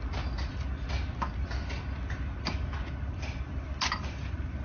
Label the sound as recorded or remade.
recorded